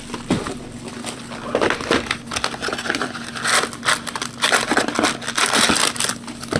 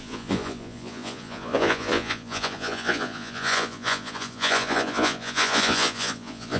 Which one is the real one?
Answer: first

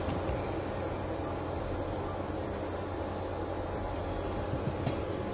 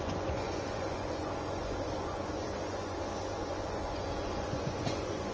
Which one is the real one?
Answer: first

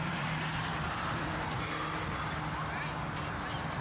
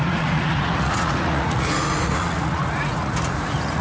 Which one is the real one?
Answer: first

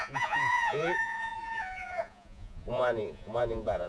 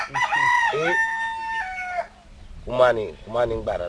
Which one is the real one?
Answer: second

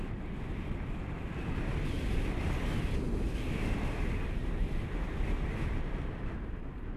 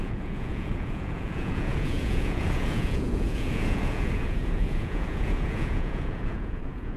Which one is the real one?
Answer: first